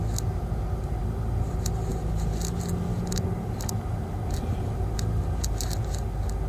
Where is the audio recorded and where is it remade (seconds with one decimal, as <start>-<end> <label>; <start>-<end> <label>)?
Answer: 0.0-6.5 recorded